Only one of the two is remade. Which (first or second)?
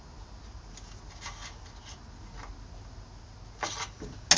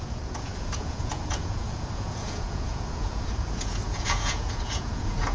second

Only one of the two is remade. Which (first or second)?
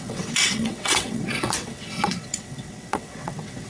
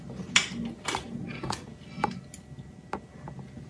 first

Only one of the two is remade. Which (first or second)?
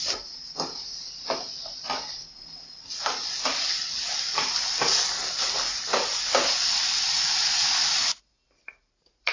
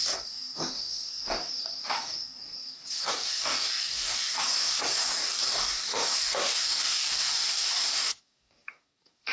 second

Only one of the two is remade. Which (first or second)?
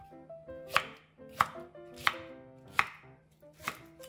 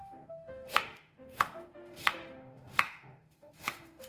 second